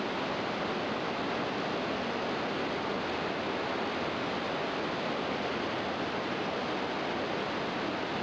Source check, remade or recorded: recorded